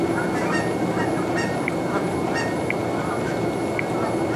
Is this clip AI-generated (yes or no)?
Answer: no